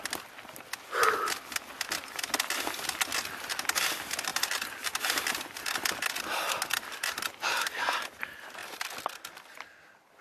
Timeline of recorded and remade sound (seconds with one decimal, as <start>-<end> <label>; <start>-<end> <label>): 0.0-4.3 recorded; 4.3-5.7 remade; 5.7-8.6 recorded; 8.6-10.2 remade